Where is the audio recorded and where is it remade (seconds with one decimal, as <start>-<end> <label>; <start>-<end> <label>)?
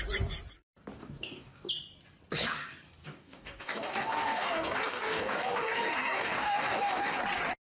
0.0-1.0 recorded; 1.0-1.7 remade; 1.7-3.0 recorded; 3.0-7.2 remade; 7.2-7.7 recorded